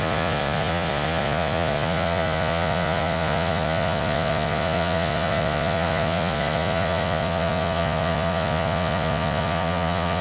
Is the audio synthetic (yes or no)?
yes